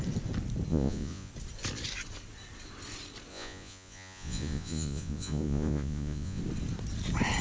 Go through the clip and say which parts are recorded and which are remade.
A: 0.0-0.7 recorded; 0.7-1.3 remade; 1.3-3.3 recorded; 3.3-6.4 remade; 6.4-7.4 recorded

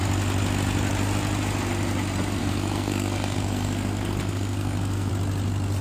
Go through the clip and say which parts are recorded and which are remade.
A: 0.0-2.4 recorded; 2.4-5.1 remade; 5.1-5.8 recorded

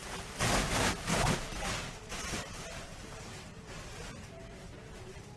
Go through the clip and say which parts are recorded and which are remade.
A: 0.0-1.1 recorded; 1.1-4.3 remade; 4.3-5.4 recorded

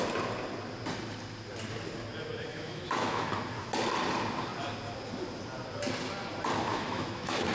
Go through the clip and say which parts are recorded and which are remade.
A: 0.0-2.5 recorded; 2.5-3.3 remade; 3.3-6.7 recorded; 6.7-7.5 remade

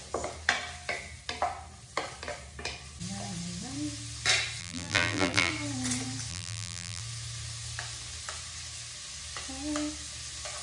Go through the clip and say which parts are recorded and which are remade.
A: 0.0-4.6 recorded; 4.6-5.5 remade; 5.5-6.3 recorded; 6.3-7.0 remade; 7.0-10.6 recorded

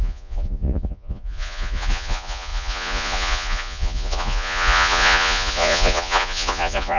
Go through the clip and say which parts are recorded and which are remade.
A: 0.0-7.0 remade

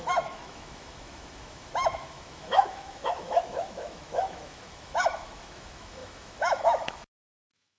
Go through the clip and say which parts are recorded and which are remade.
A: 0.0-7.8 remade

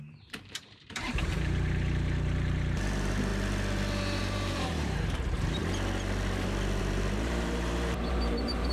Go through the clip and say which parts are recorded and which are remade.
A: 0.0-3.3 remade; 3.3-4.2 recorded; 4.2-5.6 remade; 5.6-6.8 recorded; 6.8-8.7 remade